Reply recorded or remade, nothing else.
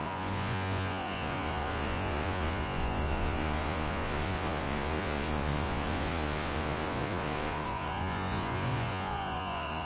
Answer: remade